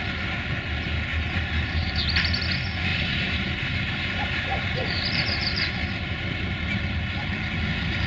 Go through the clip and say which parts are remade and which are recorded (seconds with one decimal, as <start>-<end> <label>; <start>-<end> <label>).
0.0-1.1 recorded; 1.1-2.4 remade; 2.4-2.9 recorded; 2.9-5.7 remade; 5.7-8.1 recorded